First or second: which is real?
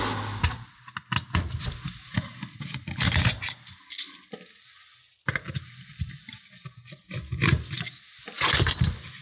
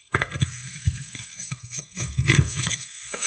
first